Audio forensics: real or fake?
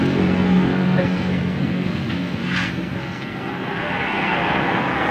fake